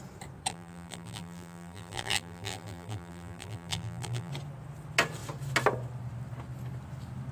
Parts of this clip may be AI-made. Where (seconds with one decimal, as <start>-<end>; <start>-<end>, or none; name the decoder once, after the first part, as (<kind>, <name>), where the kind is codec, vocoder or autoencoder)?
0.5-4.3 (vocoder, BigVGAN v2)